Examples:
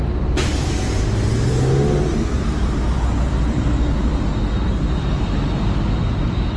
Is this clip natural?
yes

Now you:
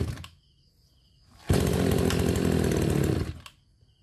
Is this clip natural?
no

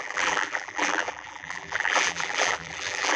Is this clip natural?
no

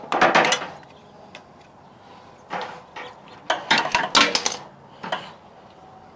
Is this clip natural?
yes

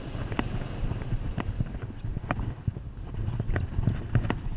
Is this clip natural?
yes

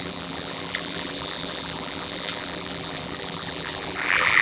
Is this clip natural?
no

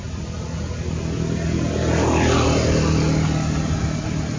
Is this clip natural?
yes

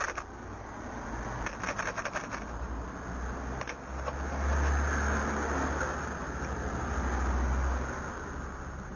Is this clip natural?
yes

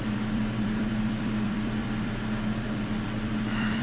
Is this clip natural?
no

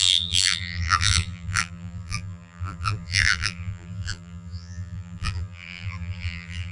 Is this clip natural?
no